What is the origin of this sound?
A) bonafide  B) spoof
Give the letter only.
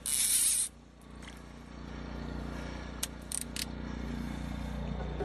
A